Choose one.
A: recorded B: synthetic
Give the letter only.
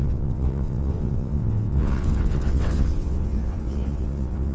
B